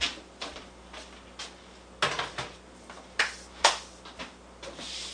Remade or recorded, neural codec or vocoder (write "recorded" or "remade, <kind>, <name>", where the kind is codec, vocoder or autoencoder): recorded